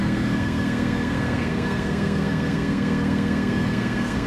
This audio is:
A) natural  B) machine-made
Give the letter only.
B